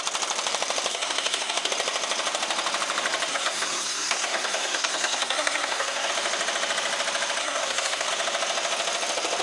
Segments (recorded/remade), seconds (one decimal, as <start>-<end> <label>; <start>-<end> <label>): 0.0-0.9 recorded; 0.9-1.7 remade; 1.7-3.3 recorded; 3.3-6.1 remade; 6.1-7.4 recorded; 7.4-8.1 remade; 8.1-9.4 recorded